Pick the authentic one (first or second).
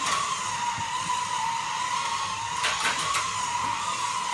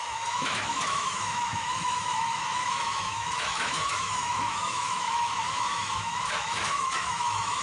first